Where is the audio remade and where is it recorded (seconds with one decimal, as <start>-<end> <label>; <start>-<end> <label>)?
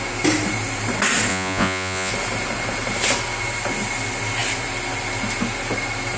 0.0-1.3 recorded; 1.3-2.1 remade; 2.1-6.2 recorded